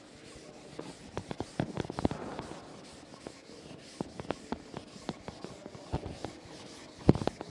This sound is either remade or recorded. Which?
recorded